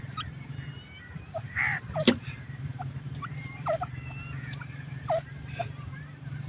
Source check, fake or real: fake